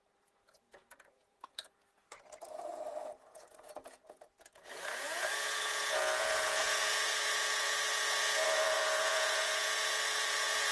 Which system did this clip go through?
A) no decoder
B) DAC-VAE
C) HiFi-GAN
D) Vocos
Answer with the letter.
D